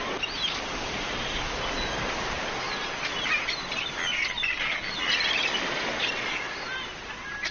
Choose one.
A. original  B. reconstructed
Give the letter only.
A